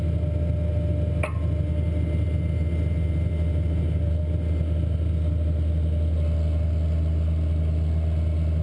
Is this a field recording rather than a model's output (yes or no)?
yes